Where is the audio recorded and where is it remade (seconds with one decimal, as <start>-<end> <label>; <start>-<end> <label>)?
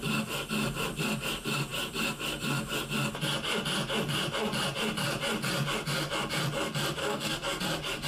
0.0-7.0 recorded; 7.0-7.6 remade; 7.6-8.1 recorded